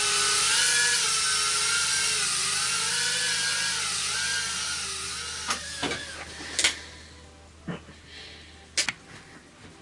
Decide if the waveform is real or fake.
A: real